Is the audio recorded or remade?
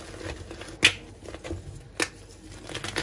recorded